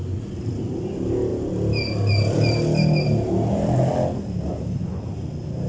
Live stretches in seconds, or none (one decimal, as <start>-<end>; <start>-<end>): 0.0-5.7